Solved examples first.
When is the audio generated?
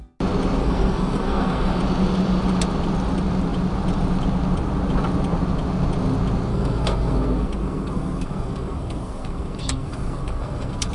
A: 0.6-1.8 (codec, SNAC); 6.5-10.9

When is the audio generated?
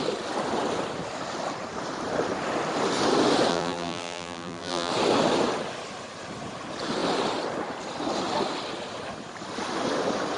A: 3.5-4.9 (vocoder, BigVGAN v2)